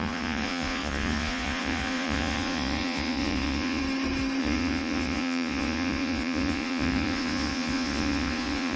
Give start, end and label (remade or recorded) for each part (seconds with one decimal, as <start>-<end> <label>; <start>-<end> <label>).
0.0-3.8 remade; 3.8-4.4 recorded; 4.4-8.8 remade